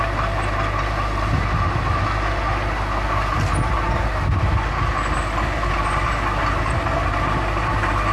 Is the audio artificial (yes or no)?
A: no